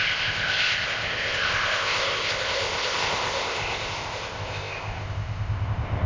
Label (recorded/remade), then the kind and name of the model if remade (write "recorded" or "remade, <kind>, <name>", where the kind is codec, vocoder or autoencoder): remade, codec, ZipCodec